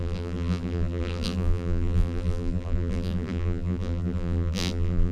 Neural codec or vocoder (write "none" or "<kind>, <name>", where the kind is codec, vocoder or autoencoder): vocoder, BigVGAN v2